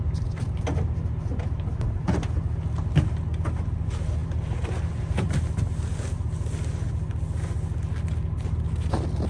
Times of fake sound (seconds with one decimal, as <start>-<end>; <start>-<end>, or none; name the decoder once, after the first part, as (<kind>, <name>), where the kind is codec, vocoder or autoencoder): none